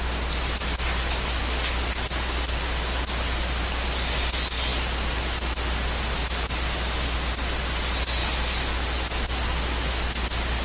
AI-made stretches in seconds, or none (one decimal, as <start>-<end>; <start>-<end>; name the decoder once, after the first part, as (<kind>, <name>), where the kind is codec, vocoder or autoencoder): none

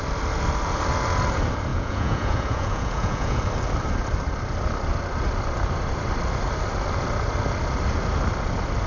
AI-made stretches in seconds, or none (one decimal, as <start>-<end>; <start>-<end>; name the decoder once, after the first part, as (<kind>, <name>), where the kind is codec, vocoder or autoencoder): 1.7-3.4 (vocoder, Vocos)